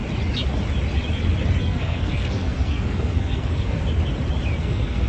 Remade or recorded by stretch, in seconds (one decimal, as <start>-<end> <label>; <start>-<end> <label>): 0.0-1.6 recorded; 1.6-3.8 remade; 3.8-4.6 recorded; 4.6-5.1 remade